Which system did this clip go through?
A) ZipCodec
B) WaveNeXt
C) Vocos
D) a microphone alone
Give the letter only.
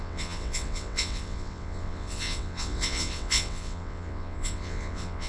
B